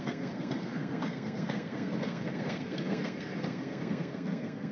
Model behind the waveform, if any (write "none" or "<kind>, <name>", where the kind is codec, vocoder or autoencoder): codec, SNAC